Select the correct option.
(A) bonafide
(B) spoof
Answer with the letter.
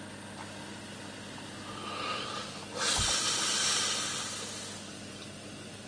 A